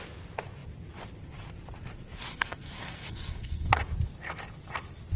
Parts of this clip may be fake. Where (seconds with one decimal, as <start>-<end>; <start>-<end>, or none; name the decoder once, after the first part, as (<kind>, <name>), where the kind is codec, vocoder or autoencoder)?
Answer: 2.3-3.8 (codec, SNAC)